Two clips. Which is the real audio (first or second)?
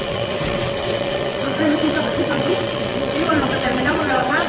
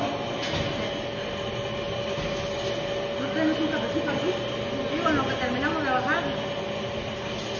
second